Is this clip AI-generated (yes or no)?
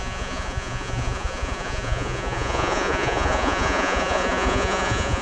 yes